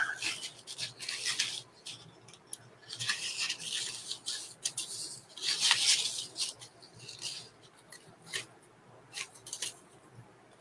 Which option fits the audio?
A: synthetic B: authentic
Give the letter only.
B